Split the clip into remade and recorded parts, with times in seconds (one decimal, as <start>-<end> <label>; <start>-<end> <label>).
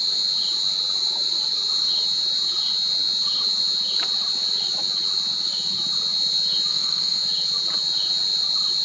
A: 0.0-6.7 recorded; 6.7-7.2 remade; 7.2-8.8 recorded